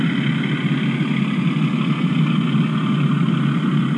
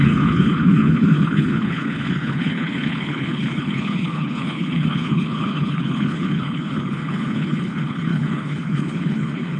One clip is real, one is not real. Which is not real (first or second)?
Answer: second